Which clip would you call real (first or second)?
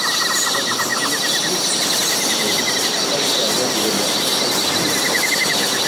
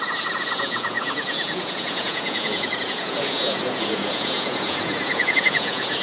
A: first